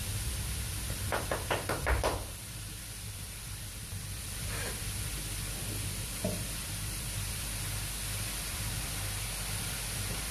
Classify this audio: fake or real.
fake